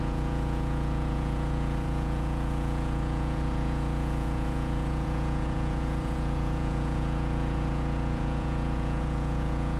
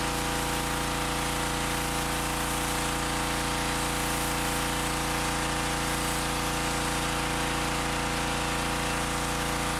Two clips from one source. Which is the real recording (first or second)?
second